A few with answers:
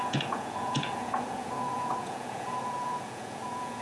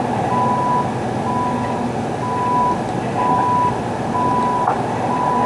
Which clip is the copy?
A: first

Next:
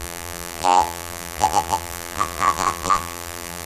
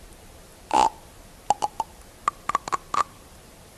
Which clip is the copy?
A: first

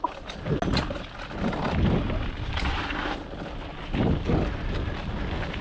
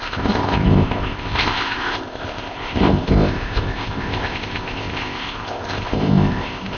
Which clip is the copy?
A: second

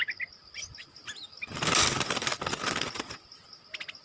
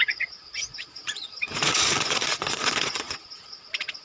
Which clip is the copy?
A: second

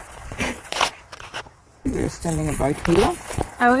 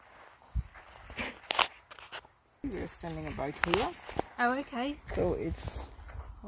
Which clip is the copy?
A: first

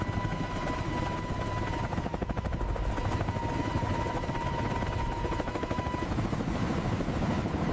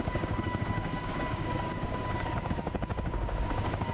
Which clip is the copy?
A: second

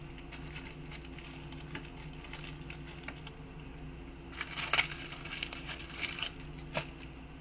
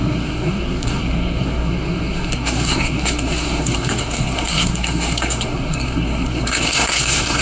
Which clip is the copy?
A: second